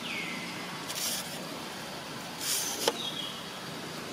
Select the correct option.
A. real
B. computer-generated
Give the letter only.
A